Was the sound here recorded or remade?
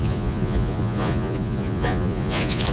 remade